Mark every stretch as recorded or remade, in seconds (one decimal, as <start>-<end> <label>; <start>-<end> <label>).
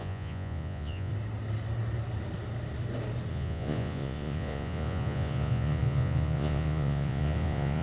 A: 0.0-1.1 remade; 1.1-3.3 recorded; 3.3-7.8 remade